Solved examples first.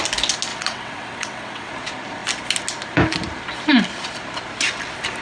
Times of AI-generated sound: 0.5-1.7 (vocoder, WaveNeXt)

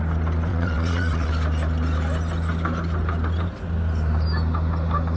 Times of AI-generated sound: 0.5-1.3 (vocoder, WaveNeXt)

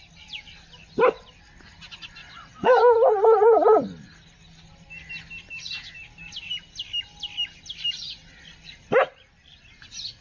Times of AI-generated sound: 2.2-2.8 (vocoder, WaveNeXt)

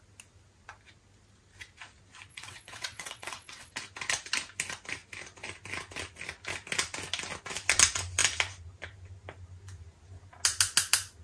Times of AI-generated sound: 2.3-3.7 (vocoder, WaveNeXt)

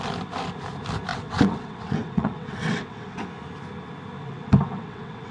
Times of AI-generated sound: 1.1-3.2 (vocoder, WaveNeXt); 4.2-5.3

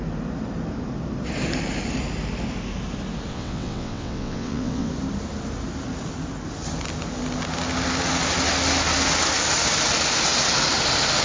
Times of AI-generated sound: 3.3-4.9 (vocoder, WaveNeXt)

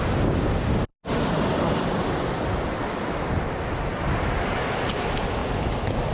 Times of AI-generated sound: none